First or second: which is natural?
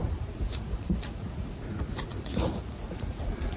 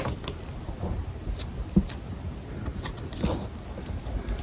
second